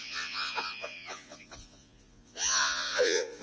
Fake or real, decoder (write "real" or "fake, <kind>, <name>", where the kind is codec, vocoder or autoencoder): fake, vocoder, Vocos